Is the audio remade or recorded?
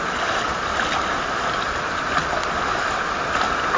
recorded